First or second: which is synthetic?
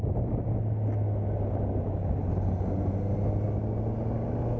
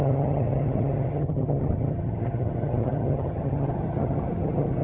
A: second